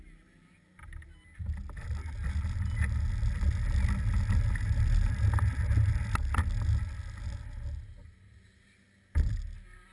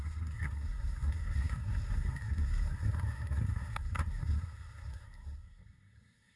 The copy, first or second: second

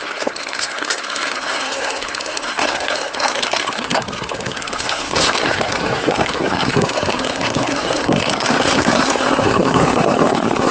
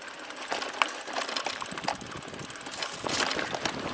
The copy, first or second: first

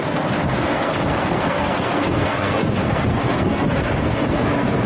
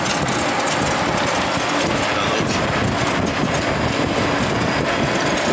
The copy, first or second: first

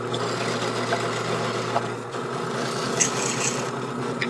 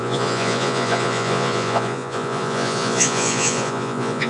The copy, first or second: second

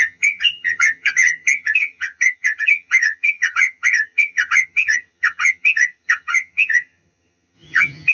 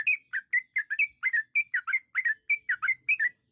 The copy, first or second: first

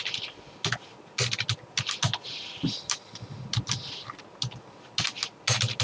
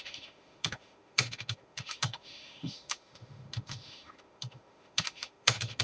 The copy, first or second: second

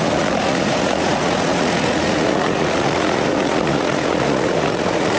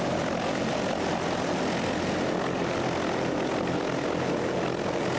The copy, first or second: first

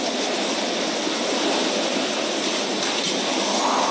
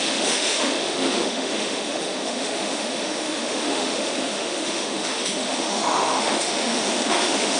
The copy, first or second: second